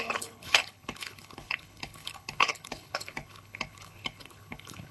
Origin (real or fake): fake